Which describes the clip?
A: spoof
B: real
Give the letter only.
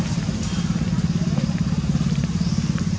B